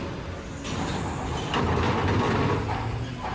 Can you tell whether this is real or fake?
real